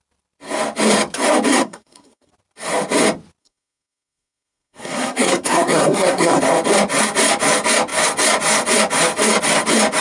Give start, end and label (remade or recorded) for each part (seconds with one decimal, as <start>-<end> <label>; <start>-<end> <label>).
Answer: 0.0-1.5 recorded; 1.5-2.3 remade; 2.3-3.4 recorded; 3.4-6.4 remade; 6.4-10.0 recorded